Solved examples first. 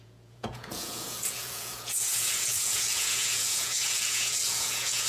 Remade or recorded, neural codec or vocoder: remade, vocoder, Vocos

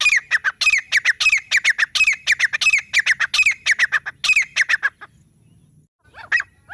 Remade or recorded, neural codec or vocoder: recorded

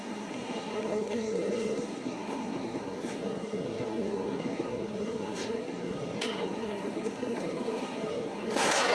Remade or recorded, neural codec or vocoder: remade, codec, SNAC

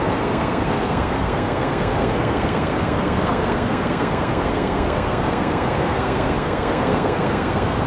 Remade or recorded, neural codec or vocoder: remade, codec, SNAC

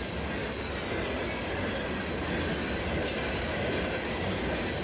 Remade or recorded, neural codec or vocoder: recorded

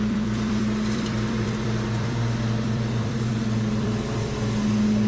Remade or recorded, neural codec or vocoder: remade, vocoder, BigVGAN v2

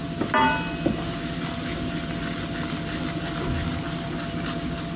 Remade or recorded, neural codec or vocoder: recorded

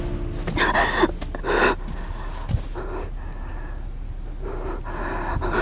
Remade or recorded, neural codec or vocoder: recorded